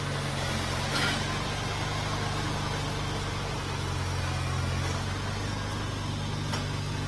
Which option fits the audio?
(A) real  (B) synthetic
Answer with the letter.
A